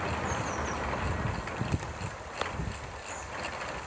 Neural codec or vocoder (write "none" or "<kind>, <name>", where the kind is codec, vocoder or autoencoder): none